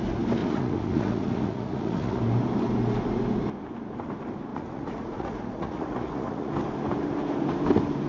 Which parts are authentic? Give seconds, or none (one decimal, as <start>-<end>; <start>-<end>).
0.0-0.4; 2.2-4.5; 6.5-8.1